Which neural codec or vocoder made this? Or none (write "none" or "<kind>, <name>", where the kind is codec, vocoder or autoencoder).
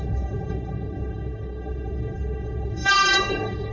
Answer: codec, SNAC